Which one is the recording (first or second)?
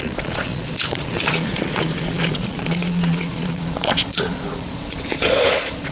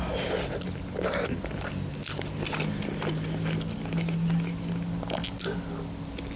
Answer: second